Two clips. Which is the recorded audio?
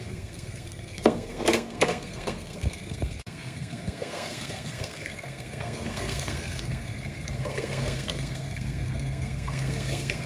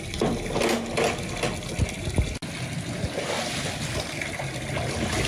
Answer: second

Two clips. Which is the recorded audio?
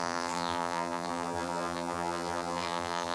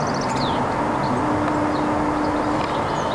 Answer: second